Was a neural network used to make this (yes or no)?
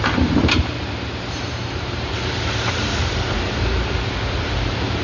yes